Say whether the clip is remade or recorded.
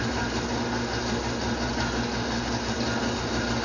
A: recorded